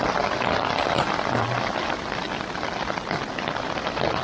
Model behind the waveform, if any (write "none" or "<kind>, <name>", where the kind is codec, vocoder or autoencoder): none